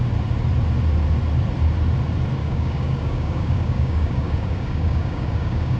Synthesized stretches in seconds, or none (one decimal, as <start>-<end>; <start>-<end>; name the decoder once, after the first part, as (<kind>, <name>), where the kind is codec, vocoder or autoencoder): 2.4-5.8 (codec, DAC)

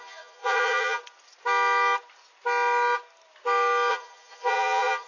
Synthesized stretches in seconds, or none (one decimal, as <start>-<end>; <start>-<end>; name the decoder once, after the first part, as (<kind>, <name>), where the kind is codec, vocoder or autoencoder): 0.0-1.0 (vocoder, Vocos); 3.9-5.1

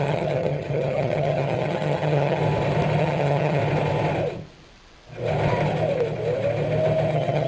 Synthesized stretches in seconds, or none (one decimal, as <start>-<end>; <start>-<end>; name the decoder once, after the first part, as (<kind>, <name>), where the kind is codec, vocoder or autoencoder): 0.0-2.4 (vocoder, HiFi-GAN); 3.0-3.6; 7.1-7.5